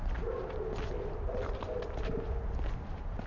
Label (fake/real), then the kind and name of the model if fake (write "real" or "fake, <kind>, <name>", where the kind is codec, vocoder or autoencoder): real